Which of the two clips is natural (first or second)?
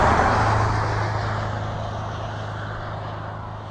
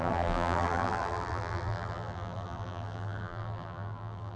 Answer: first